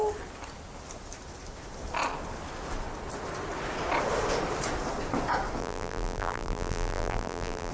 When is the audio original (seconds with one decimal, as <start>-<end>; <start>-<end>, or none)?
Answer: 0.0-5.6